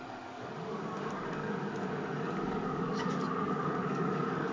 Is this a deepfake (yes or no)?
yes